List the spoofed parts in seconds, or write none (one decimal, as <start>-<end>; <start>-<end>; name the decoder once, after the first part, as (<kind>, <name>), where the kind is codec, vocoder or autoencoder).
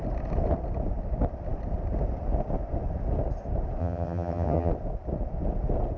3.8-4.7 (vocoder, HiFi-GAN)